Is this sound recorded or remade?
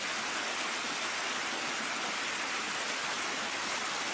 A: recorded